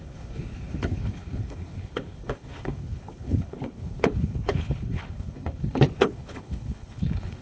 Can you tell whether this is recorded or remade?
remade